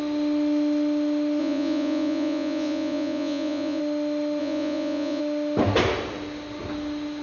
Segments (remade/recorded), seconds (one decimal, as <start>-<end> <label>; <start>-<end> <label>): 0.0-1.4 recorded; 1.4-3.8 remade; 3.8-4.4 recorded; 4.4-5.2 remade; 5.2-7.2 recorded

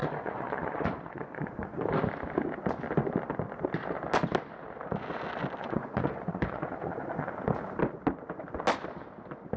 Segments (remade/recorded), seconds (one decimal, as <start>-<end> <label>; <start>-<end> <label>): 0.0-1.8 remade; 1.8-5.6 recorded; 5.6-7.3 remade; 7.3-9.6 recorded